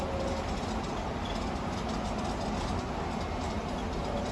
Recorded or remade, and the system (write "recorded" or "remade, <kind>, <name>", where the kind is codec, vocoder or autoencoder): recorded